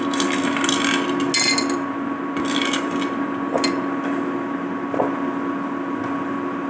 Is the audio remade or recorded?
recorded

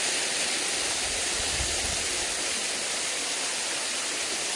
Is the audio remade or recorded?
recorded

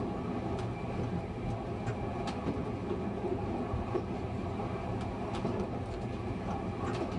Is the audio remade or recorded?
recorded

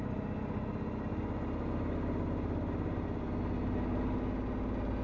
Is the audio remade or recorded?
recorded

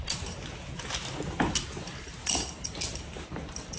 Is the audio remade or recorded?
recorded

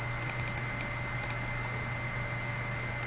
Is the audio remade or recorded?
recorded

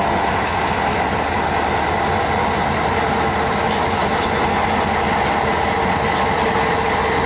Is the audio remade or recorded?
recorded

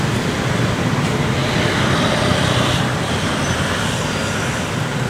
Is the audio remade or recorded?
recorded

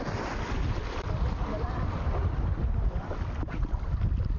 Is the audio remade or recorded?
recorded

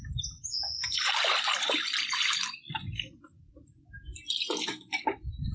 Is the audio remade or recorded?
recorded